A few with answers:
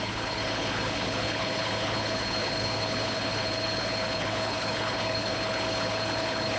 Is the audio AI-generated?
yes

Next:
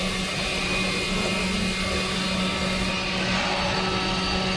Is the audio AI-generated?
no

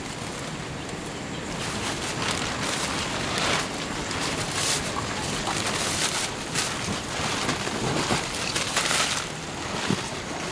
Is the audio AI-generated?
no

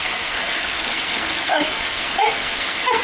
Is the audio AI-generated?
yes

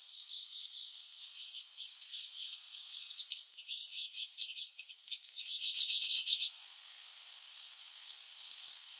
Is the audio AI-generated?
yes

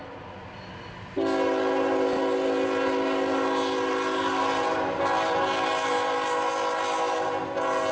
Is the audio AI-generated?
no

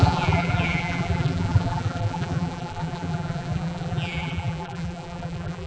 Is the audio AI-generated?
yes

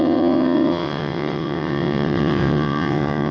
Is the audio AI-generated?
yes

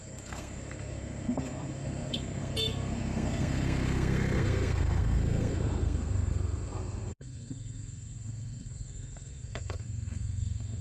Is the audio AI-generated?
yes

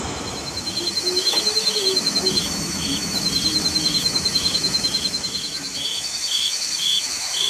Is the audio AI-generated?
yes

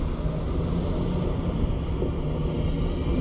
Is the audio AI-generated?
no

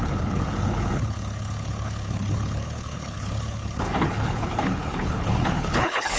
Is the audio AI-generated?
yes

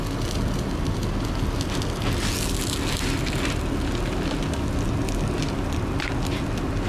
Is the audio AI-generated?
no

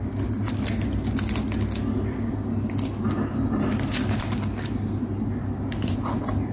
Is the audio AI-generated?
no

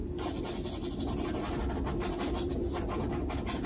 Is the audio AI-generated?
no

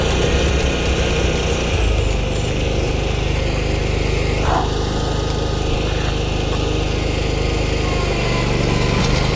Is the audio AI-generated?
no